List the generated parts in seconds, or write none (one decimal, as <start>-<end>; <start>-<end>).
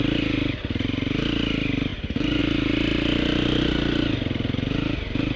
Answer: 1.9-2.4